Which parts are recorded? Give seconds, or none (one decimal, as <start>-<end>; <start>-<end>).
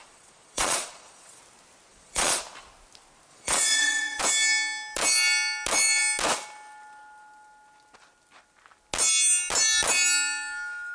1.4-1.9; 2.4-3.3; 4.2-10.9